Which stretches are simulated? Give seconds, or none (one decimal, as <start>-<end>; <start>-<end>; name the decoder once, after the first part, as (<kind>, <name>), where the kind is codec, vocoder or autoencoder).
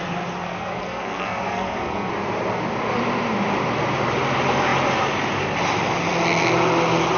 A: 0.4-2.1 (codec, SNAC)